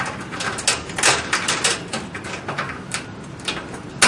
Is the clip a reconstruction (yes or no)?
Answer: no